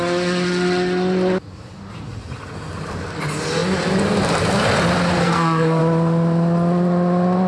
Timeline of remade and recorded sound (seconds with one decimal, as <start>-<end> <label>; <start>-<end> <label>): 0.0-5.2 recorded; 5.2-5.8 remade; 5.8-7.5 recorded